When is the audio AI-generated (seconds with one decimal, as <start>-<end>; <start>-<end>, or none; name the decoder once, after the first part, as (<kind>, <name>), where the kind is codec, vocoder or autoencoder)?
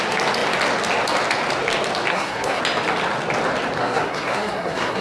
2.1-2.6 (codec, SNAC); 3.8-5.0